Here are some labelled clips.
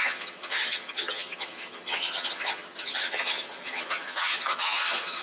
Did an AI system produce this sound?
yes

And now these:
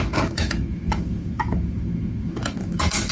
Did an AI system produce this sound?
yes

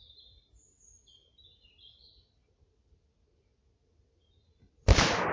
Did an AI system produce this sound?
no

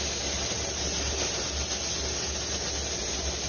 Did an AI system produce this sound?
no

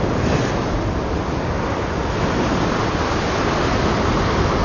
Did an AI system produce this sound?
no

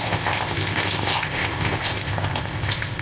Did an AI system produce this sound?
yes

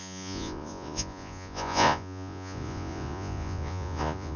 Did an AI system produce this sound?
yes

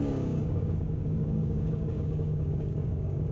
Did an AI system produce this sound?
yes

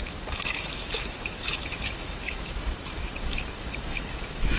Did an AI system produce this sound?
yes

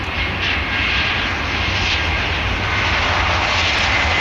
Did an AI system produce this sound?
no